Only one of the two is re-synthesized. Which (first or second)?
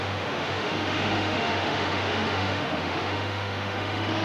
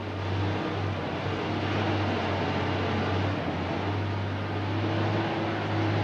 first